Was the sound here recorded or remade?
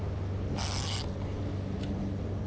recorded